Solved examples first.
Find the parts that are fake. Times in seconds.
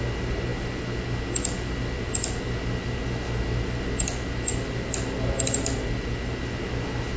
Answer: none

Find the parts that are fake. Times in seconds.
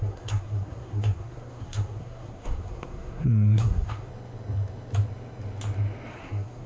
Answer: 0.0-4.1 (codec, SNAC); 6.1-6.7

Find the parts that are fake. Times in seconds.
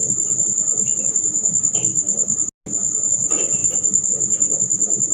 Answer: none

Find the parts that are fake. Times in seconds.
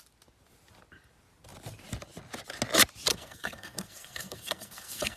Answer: 3.1-5.2 (codec, SNAC)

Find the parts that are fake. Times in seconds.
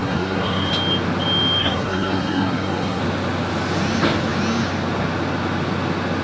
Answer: 0.0-0.7 (codec, SNAC); 1.6-3.0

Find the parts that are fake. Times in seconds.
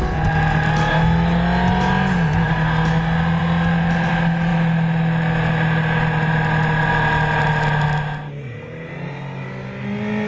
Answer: none